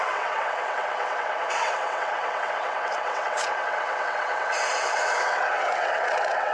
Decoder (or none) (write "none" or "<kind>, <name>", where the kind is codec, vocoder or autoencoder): vocoder, WaveNeXt